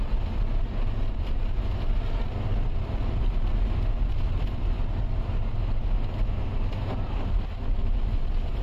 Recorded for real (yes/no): yes